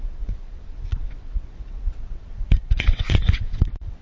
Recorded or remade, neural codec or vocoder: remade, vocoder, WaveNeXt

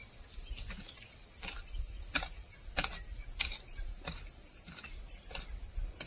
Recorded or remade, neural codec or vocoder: recorded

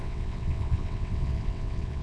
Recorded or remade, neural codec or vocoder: remade, vocoder, WaveNeXt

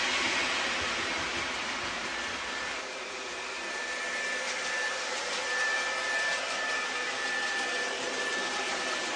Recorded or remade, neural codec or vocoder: recorded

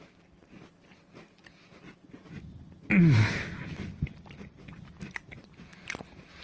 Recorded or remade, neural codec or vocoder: recorded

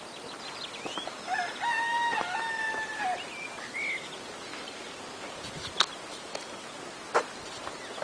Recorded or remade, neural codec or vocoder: recorded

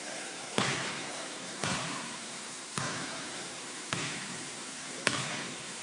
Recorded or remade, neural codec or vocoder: remade, codec, SNAC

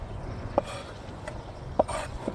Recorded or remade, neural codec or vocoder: remade, vocoder, Vocos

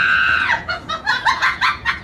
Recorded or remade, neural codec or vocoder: remade, vocoder, Vocos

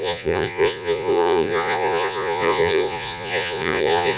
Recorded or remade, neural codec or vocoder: remade, vocoder, Vocos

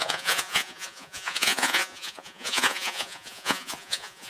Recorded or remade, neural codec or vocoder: remade, vocoder, Vocos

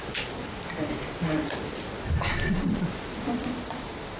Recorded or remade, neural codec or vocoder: recorded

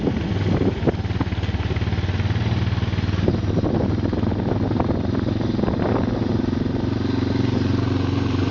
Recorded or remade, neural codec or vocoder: recorded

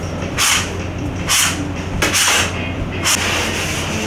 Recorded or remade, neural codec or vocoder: recorded